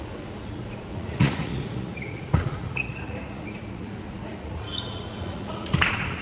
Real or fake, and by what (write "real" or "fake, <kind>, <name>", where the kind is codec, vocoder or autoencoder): fake, vocoder, Vocos